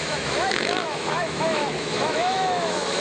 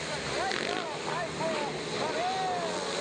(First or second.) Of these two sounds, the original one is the second